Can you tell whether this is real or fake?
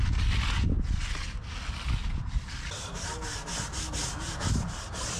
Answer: real